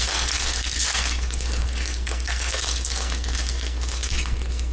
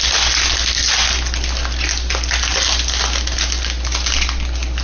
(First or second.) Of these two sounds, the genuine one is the second